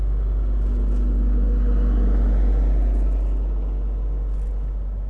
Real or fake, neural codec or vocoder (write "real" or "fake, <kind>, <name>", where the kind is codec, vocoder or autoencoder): real